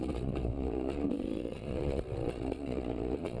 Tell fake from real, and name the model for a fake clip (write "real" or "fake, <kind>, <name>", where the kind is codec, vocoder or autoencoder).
fake, vocoder, Vocos